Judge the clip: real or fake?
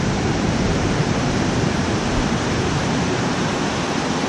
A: fake